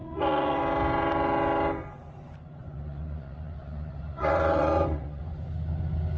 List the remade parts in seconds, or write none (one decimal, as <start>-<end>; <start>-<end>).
0.0-0.6; 2.6-5.2

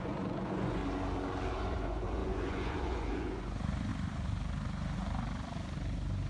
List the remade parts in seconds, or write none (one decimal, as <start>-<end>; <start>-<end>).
0.0-0.8; 1.5-3.9

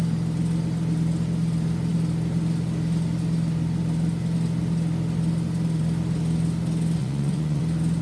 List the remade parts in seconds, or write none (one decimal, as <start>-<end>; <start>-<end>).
7.0-7.6

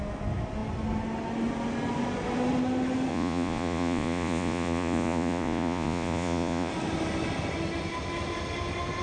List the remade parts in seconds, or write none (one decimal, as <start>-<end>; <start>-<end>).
3.1-6.7

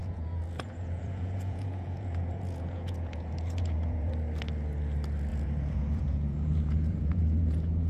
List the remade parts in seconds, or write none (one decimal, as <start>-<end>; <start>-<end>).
0.0-4.1; 5.3-7.9

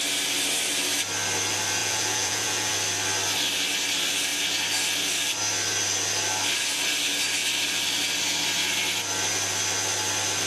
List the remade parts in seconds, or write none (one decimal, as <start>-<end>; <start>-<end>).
1.8-2.7

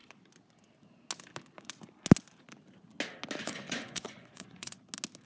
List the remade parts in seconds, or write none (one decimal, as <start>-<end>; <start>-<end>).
3.4-4.8